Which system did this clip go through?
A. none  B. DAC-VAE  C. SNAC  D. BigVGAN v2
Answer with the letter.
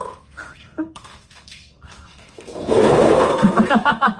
C